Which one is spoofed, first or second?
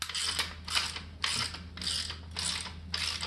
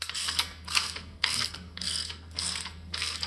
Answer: second